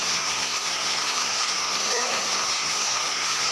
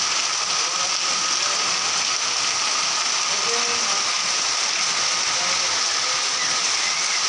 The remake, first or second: first